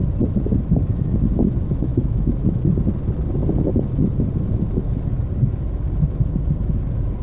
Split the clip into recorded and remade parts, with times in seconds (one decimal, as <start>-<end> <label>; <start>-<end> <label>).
0.0-1.9 recorded; 1.9-2.6 remade; 2.6-7.2 recorded